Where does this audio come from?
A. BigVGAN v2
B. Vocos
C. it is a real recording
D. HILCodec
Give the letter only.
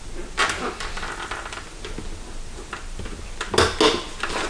C